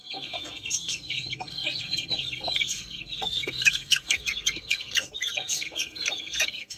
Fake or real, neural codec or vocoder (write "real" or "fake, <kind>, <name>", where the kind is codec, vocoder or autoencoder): fake, codec, SNAC